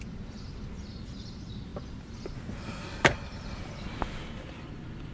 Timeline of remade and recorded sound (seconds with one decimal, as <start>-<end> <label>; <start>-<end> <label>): 0.0-5.1 recorded

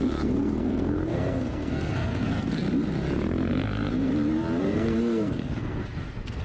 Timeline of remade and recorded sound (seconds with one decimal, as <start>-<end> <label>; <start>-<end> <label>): 0.0-2.6 remade; 2.6-3.5 recorded; 3.5-4.1 remade; 4.1-4.6 recorded; 4.6-6.4 remade

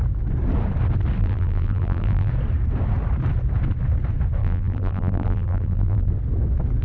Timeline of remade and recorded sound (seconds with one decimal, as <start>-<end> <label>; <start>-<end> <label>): 0.0-1.2 recorded; 1.2-2.3 remade; 2.3-4.4 recorded; 4.4-6.1 remade; 6.1-6.8 recorded